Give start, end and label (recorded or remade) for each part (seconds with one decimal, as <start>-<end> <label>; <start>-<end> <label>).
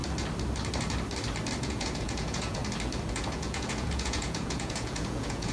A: 0.0-1.6 recorded; 1.6-2.6 remade; 2.6-3.1 recorded; 3.1-5.5 remade